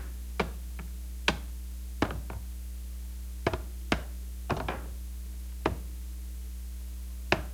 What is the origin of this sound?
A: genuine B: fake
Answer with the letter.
A